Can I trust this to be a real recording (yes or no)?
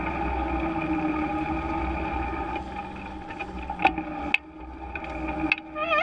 yes